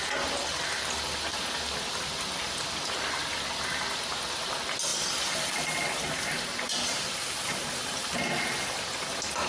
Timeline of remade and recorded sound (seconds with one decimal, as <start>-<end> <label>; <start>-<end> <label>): 0.0-9.5 recorded